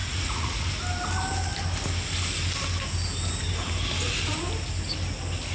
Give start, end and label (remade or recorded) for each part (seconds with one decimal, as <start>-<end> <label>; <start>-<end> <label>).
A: 0.0-0.7 remade; 0.7-5.5 recorded